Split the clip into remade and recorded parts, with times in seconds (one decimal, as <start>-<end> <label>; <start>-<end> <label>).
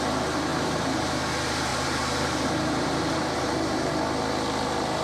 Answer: 0.0-0.5 recorded; 0.5-1.2 remade; 1.2-1.7 recorded; 1.7-3.9 remade; 3.9-5.0 recorded